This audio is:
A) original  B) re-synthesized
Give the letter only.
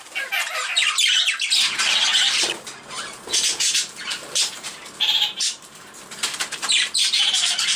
B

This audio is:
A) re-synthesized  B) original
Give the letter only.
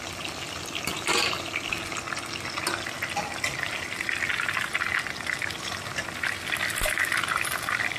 B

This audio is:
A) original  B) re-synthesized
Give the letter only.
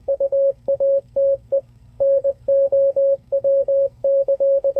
B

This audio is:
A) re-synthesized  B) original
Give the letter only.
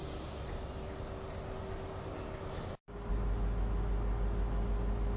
B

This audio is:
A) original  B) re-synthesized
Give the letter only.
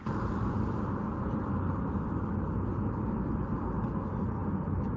A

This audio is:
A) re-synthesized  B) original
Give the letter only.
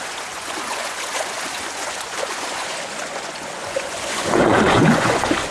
A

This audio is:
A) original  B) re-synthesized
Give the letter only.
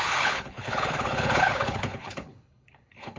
B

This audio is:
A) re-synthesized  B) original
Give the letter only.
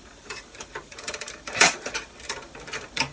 A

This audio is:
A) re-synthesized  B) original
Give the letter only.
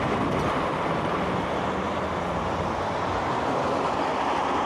B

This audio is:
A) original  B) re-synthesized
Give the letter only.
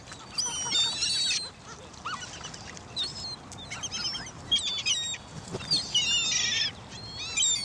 A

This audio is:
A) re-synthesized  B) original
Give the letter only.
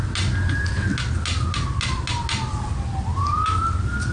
B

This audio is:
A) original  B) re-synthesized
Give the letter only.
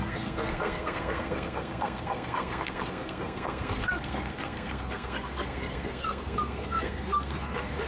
B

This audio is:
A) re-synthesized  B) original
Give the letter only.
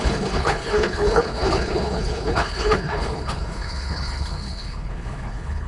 A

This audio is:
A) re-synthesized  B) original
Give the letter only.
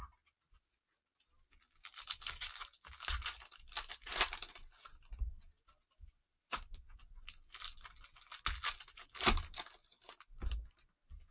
B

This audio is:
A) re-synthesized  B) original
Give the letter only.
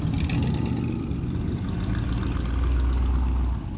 B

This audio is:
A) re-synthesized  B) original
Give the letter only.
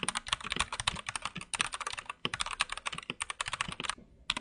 B